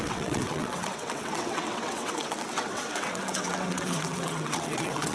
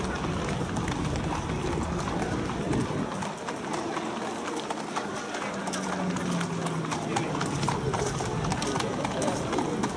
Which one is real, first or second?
second